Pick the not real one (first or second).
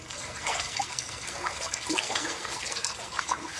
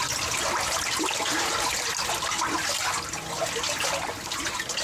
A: first